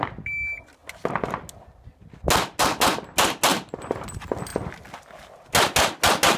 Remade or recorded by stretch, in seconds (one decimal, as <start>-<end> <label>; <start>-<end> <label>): 0.0-6.4 recorded